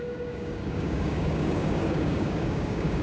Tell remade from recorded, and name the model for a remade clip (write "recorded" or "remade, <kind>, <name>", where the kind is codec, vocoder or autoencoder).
remade, codec, DAC